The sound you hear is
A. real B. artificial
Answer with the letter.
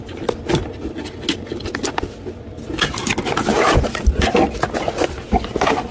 A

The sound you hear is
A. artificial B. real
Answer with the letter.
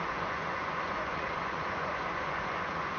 A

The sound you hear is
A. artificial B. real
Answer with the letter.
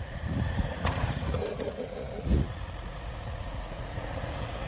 A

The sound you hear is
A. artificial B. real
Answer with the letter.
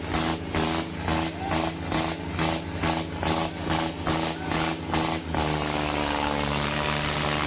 B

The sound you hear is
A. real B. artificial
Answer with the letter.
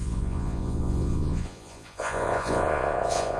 B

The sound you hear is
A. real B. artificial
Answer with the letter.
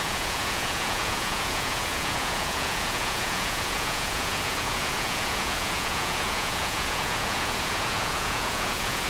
B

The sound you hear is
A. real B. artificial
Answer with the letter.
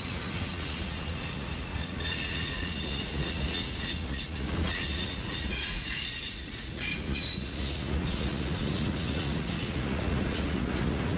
B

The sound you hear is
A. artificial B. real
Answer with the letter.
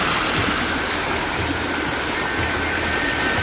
B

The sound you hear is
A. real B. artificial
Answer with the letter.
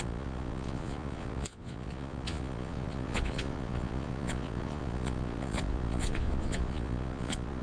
B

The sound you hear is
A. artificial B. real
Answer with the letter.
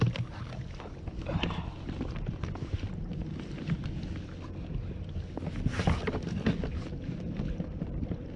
B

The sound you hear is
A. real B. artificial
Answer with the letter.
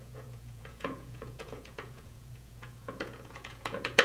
B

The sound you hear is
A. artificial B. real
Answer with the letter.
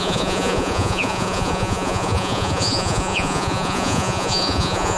A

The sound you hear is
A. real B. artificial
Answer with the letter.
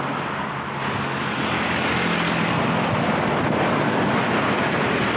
A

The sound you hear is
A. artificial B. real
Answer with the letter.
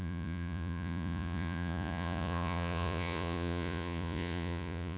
A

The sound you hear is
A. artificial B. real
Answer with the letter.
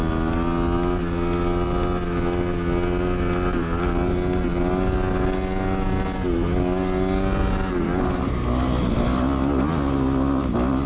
B